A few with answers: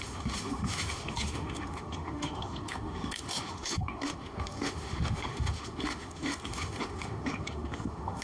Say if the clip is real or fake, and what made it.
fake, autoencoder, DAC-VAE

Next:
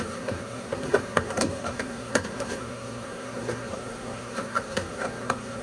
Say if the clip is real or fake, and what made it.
fake, codec, SNAC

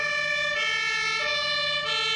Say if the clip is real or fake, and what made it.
real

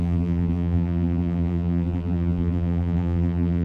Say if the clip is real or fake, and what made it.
fake, vocoder, BigVGAN v2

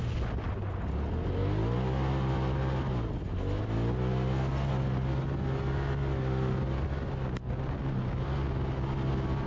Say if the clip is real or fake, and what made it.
real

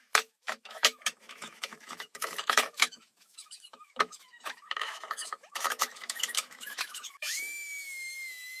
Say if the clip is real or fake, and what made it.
fake, autoencoder, DAC-VAE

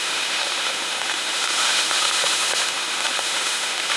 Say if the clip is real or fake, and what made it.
fake, autoencoder, DAC-VAE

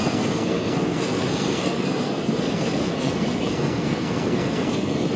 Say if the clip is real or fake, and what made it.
fake, codec, SNAC